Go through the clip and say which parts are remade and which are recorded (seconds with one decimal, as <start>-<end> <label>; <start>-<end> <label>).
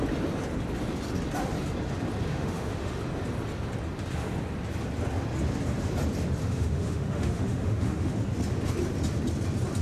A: 0.0-2.3 recorded; 2.3-3.0 remade; 3.0-6.4 recorded; 6.4-8.1 remade; 8.1-9.8 recorded